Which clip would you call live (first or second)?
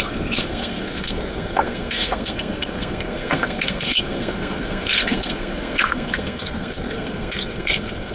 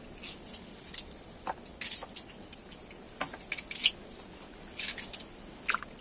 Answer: second